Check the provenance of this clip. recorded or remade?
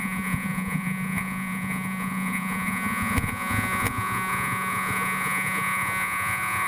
remade